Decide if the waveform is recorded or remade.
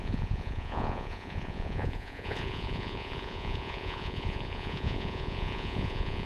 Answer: remade